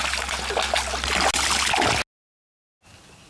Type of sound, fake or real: real